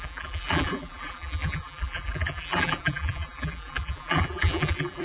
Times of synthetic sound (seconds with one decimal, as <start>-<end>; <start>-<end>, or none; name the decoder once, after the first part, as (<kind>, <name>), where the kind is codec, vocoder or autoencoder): 0.0-5.0 (vocoder, BigVGAN v2)